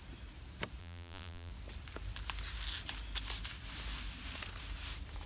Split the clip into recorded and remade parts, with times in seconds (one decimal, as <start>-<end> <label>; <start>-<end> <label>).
0.0-0.8 recorded; 0.8-1.5 remade; 1.5-5.3 recorded